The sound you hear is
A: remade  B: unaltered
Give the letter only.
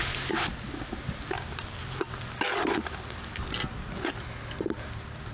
B